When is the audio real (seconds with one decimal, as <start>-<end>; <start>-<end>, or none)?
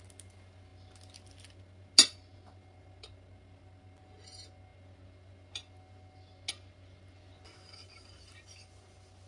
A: 0.0-9.3